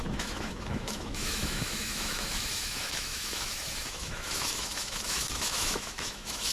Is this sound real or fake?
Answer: fake